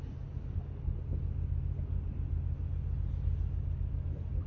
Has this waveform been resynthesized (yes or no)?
no